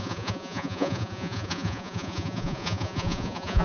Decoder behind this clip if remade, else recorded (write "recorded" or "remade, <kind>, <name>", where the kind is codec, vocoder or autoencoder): remade, vocoder, Vocos